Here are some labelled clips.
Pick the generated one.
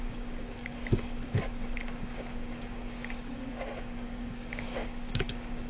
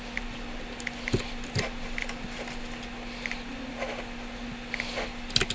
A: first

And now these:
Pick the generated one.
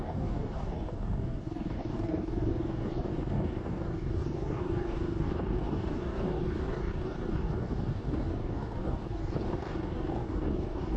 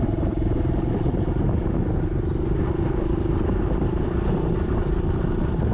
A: first